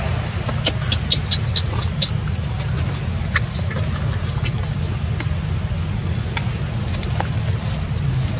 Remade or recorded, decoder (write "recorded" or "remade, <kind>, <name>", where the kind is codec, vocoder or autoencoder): recorded